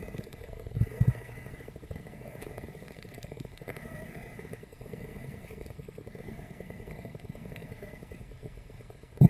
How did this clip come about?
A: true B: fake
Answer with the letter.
B